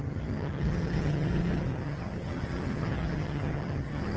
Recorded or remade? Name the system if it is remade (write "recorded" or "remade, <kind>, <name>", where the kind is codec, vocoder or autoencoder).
remade, vocoder, HiFi-GAN